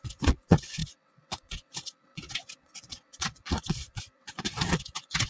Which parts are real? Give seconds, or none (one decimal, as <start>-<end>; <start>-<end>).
none